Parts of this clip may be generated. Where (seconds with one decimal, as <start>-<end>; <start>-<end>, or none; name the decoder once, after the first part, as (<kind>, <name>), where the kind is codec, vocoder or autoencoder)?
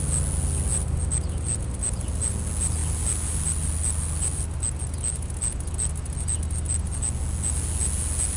none